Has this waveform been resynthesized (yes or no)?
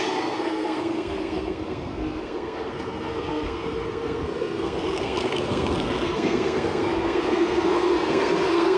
yes